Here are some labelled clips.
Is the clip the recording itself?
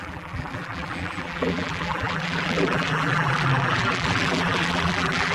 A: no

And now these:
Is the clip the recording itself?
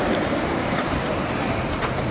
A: no